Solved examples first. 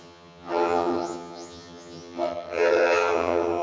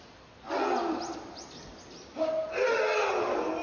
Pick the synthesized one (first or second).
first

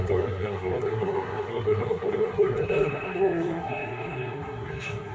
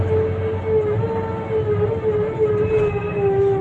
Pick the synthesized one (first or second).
first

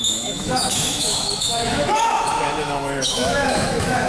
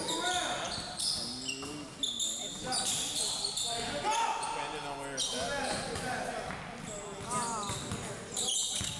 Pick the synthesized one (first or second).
first